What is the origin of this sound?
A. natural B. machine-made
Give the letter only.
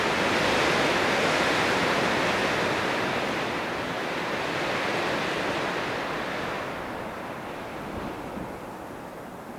A